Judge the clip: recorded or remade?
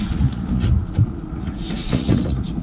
remade